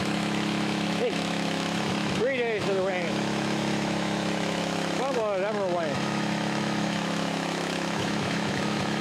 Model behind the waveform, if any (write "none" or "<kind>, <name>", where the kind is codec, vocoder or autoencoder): autoencoder, DAC-VAE